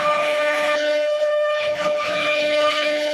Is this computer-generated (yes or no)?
yes